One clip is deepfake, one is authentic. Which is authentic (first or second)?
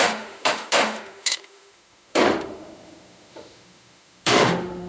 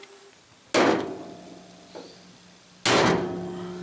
second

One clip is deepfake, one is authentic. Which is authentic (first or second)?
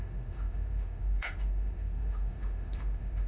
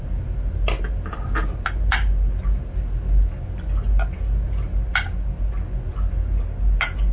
second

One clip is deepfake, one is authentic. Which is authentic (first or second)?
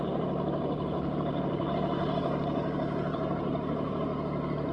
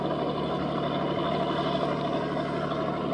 second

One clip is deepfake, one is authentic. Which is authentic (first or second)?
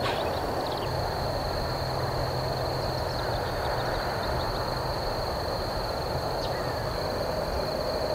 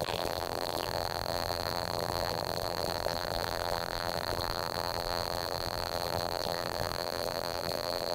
first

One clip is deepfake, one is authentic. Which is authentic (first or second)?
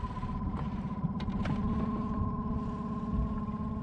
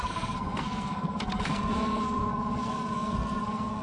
first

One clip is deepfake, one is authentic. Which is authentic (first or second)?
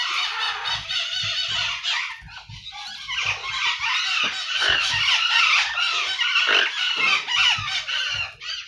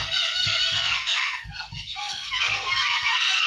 first